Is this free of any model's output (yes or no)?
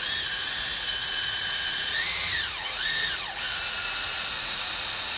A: no